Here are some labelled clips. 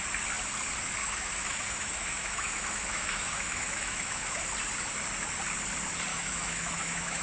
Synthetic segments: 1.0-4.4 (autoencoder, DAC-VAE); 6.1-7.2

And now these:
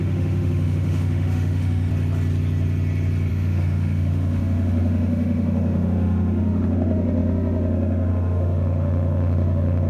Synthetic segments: 0.0-1.9 (autoencoder, DAC-VAE); 3.3-9.9

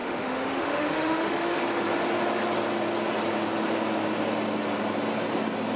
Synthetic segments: 0.0-1.6 (autoencoder, DAC-VAE)

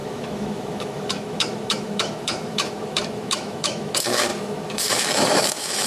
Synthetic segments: 0.0-5.9 (autoencoder, DAC-VAE)

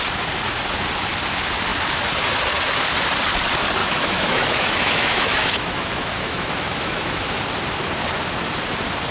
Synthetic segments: 3.8-7.4 (autoencoder, DAC-VAE)

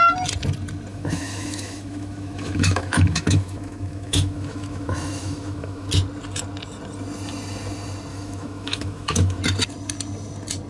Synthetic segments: 0.9-5.9 (autoencoder, DAC-VAE); 8.1-9.4